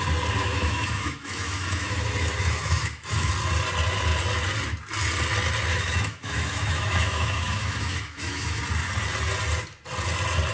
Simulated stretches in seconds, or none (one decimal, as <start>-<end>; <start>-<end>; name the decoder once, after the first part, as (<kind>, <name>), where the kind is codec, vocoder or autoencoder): 0.4-3.3 (autoencoder, DAC-VAE); 5.7-8.6